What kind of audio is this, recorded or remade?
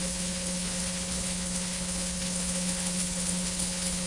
remade